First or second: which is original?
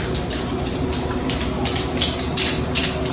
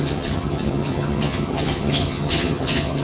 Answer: first